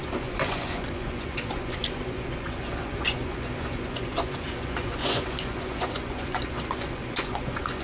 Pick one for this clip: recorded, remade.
remade